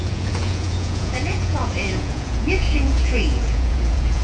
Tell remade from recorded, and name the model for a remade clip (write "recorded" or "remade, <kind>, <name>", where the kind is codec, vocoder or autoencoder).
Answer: remade, vocoder, Vocos